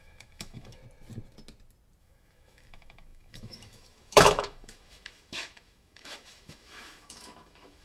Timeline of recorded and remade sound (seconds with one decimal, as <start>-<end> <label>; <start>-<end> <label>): 0.0-0.8 remade; 0.8-2.0 recorded; 2.0-7.8 remade